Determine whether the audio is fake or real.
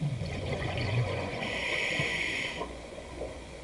fake